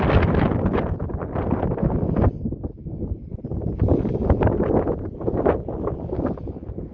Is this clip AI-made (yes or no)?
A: no